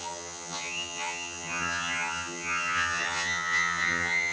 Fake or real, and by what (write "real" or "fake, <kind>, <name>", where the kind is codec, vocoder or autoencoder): fake, vocoder, HiFi-GAN